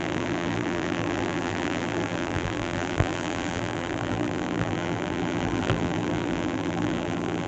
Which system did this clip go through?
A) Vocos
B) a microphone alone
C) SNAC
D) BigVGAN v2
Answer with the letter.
D